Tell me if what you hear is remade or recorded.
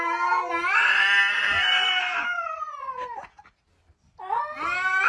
recorded